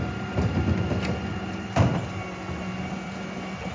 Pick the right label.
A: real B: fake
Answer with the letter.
A